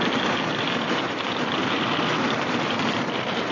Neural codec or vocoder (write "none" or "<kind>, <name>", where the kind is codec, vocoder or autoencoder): none